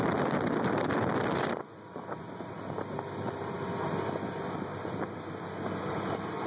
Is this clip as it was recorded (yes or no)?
yes